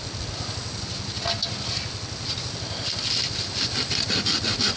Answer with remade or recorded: recorded